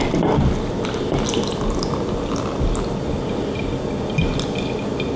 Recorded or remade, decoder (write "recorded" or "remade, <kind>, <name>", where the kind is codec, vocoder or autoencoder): recorded